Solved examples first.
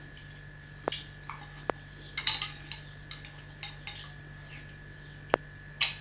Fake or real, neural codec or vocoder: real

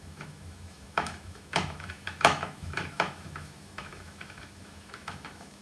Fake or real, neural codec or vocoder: fake, autoencoder, DAC-VAE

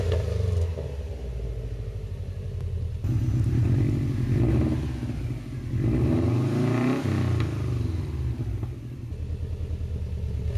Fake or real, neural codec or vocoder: real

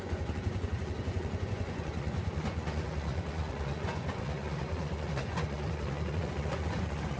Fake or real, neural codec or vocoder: fake, vocoder, Vocos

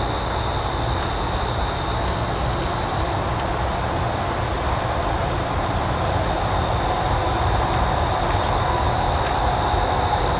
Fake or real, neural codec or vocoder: real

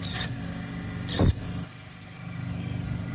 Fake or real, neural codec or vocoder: real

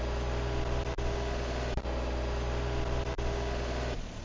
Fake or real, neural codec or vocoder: real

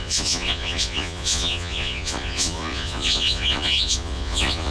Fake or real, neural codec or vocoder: fake, vocoder, Vocos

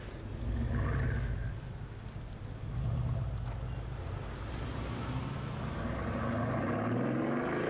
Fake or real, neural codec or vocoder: real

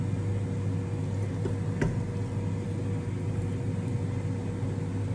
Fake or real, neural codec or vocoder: real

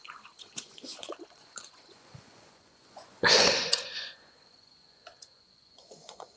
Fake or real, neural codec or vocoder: fake, vocoder, Vocos